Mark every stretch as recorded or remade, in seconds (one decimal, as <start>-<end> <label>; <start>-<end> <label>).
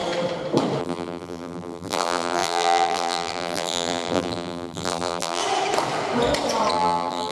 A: 0.0-0.8 recorded; 0.8-5.4 remade; 5.4-6.7 recorded; 6.7-7.3 remade